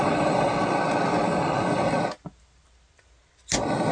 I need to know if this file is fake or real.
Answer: real